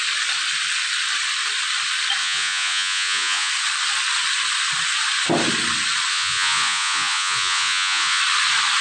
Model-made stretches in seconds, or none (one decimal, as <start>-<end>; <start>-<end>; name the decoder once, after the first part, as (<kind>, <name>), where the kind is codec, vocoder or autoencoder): 2.2-3.5 (vocoder, Vocos); 6.1-8.2